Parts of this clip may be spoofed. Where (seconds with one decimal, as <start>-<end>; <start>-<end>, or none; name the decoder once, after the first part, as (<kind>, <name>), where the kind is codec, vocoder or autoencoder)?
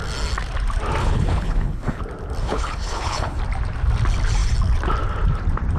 1.0-2.0 (codec, HILCodec); 2.4-3.4